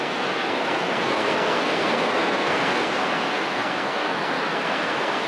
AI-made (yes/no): yes